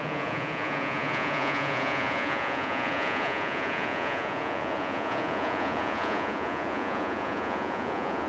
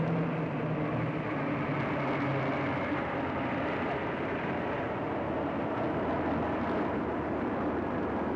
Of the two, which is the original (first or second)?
second